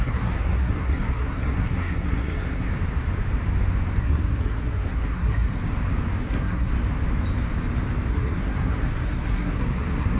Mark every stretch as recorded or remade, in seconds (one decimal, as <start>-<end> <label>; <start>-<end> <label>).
0.0-2.7 remade; 2.7-4.0 recorded; 4.0-5.6 remade; 5.6-6.2 recorded; 6.2-6.7 remade; 6.7-8.1 recorded; 8.1-10.2 remade